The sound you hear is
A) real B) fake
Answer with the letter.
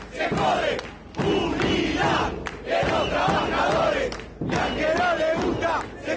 A